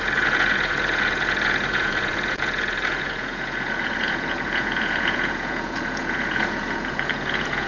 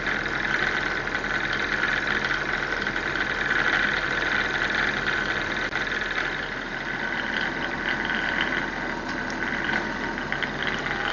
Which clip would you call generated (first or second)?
first